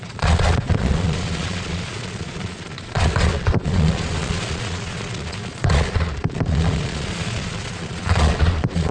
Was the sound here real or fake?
fake